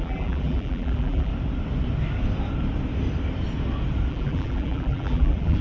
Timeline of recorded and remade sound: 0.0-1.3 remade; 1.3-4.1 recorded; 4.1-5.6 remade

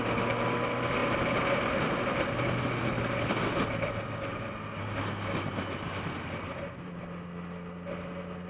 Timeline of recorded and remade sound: 0.0-8.5 recorded

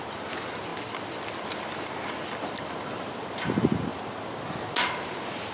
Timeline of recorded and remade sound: 0.0-5.5 recorded

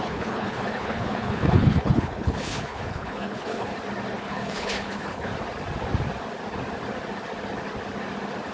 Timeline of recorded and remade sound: 0.0-3.7 remade; 3.7-4.2 recorded; 4.2-5.3 remade; 5.3-8.5 recorded

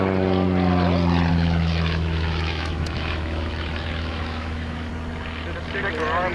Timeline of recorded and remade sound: 0.0-1.3 recorded; 1.3-4.9 remade; 4.9-6.3 recorded

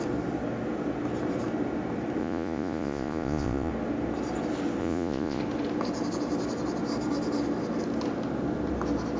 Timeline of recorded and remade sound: 0.0-2.2 recorded; 2.2-3.7 remade; 3.7-4.8 recorded; 4.8-5.4 remade; 5.4-9.2 recorded

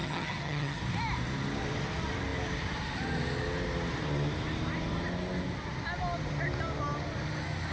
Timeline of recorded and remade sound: 0.0-0.8 remade; 0.8-7.7 recorded

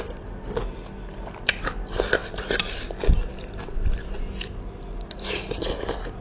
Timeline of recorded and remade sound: 0.0-6.2 recorded